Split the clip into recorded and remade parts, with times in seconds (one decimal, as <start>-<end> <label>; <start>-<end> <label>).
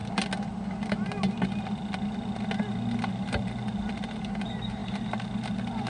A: 0.0-3.1 recorded; 3.1-5.9 remade